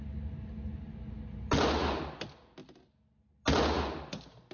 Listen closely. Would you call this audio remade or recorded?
recorded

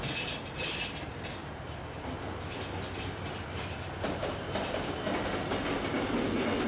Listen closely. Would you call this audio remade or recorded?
recorded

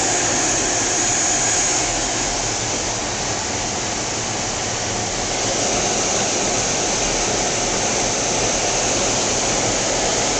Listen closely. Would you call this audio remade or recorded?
recorded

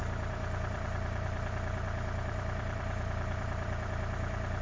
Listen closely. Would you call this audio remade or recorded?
remade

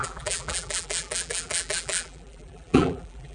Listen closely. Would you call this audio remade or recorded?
remade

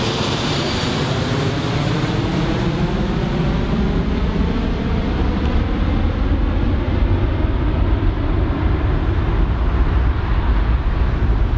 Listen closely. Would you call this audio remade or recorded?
recorded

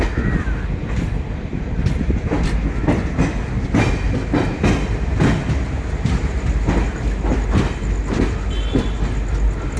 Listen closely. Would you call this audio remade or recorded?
recorded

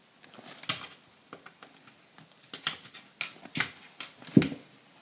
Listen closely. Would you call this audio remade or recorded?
recorded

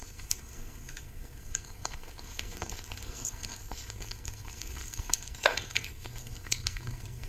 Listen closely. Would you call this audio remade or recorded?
remade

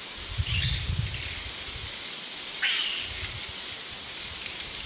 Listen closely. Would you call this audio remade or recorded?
recorded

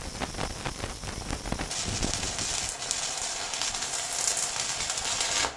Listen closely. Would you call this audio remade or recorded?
recorded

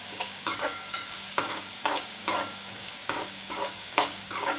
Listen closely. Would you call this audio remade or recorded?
remade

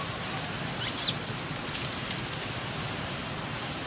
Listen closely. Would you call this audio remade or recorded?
recorded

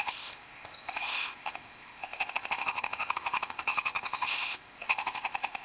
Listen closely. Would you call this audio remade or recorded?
remade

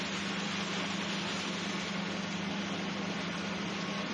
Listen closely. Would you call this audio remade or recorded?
recorded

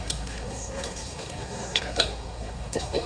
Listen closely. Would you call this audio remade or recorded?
remade